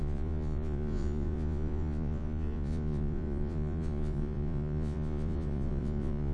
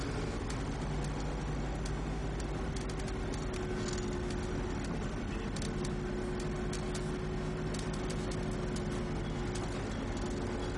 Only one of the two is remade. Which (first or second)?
first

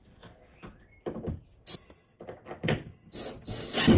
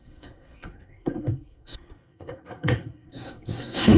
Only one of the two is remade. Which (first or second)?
second